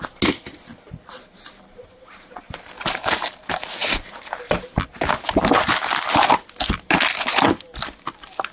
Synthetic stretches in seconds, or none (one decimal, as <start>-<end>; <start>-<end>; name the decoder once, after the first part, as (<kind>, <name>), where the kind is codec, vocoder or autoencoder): 0.7-3.4 (vocoder, BigVGAN v2); 3.8-4.9

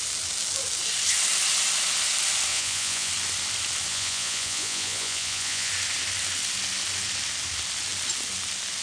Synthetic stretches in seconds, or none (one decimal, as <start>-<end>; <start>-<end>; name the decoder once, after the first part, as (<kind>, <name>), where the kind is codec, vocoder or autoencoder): 2.5-3.1 (vocoder, Vocos); 3.9-5.7

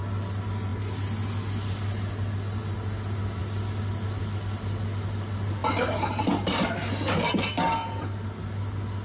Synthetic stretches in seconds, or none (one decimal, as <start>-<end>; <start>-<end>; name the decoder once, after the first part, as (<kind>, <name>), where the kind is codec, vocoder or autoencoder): none

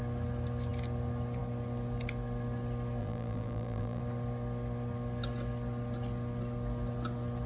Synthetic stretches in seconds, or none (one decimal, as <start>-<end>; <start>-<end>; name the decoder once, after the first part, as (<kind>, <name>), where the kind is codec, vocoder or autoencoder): 3.0-4.0 (vocoder, BigVGAN v2)

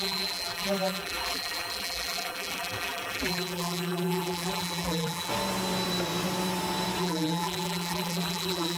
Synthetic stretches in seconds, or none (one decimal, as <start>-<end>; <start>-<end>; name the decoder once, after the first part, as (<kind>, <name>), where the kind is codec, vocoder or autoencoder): 0.0-5.3 (vocoder, BigVGAN v2); 7.0-8.8

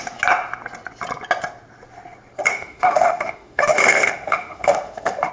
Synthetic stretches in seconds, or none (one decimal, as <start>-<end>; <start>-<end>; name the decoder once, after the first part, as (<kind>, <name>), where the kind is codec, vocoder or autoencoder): 2.5-5.3 (autoencoder, DAC-VAE)